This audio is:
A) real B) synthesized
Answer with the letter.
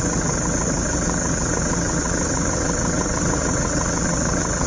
B